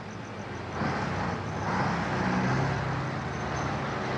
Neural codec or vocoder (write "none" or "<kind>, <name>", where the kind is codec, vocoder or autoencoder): none